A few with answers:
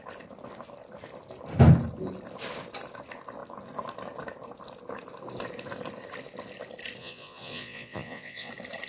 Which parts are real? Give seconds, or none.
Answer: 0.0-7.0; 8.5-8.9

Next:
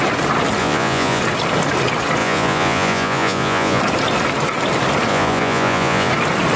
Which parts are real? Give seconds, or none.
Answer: 0.0-0.6; 1.2-2.2; 3.8-5.1; 6.1-6.6